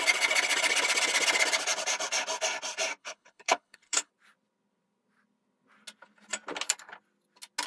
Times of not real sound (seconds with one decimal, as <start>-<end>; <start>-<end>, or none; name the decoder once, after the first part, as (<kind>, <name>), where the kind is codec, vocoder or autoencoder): 3.0-4.1 (codec, HILCodec)